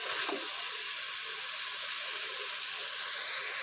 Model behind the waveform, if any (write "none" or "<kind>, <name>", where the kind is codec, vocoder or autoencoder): none